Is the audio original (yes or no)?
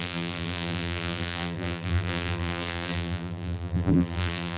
no